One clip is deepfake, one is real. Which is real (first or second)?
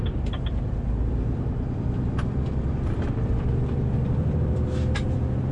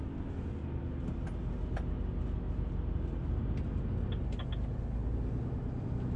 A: second